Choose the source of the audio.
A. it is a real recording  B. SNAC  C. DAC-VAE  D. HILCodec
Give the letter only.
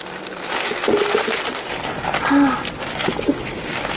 A